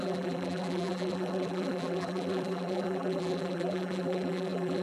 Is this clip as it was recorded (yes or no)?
no